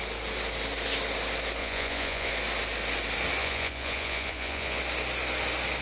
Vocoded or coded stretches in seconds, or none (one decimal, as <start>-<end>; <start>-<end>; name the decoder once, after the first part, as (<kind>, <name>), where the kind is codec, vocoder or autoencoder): 1.6-2.3 (vocoder, Vocos); 3.4-4.8